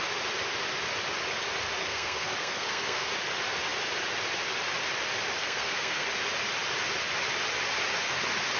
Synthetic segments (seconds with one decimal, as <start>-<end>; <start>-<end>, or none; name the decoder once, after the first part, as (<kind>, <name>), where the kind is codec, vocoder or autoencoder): 1.8-3.1 (codec, SNAC); 5.4-6.1